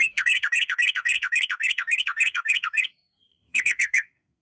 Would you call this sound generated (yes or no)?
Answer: yes